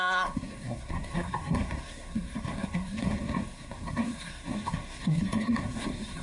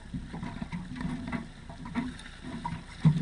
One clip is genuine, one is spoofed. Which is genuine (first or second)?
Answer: second